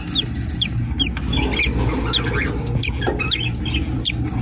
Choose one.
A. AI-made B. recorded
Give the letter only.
B